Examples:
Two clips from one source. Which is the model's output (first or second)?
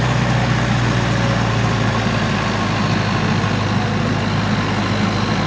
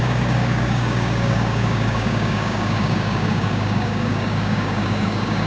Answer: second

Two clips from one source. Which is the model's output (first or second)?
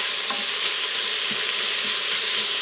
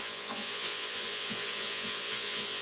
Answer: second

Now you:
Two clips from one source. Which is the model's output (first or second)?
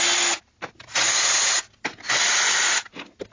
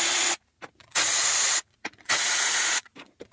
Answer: second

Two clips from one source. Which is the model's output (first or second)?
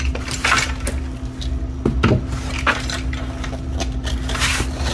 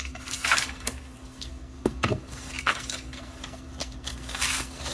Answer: second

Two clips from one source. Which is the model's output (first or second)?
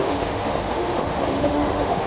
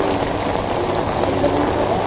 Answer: first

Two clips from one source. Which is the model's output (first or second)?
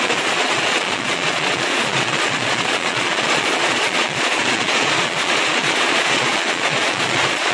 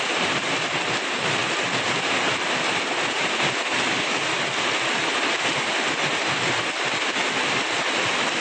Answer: first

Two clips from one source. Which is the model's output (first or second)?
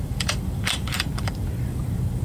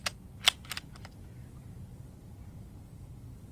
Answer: first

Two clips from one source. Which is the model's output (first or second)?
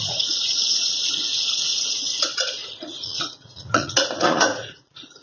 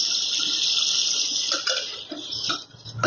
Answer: first